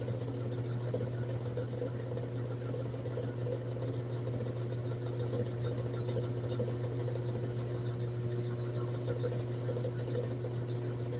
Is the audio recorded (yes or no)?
yes